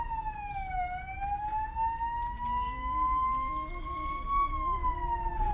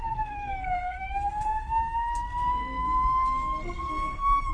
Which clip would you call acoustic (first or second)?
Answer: first